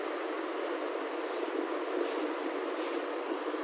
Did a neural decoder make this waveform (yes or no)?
no